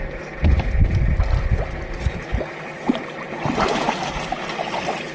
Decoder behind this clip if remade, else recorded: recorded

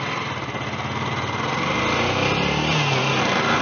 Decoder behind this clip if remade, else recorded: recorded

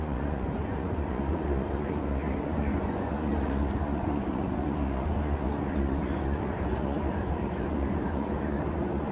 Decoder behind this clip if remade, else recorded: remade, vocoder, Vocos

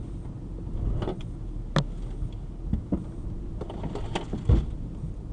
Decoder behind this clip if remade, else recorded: recorded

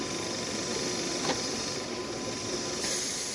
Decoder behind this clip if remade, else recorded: recorded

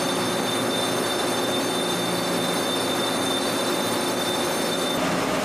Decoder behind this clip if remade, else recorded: recorded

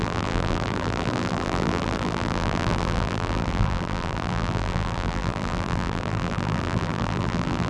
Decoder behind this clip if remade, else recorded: remade, vocoder, BigVGAN v2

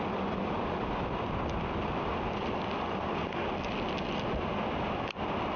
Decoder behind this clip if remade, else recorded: recorded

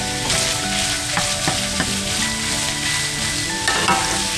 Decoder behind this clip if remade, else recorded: recorded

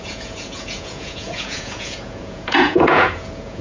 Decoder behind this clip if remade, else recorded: remade, vocoder, Vocos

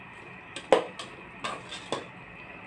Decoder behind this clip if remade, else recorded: recorded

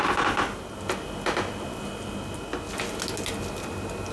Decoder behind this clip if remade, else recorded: recorded